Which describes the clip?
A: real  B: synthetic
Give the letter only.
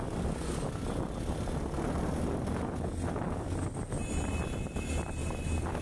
A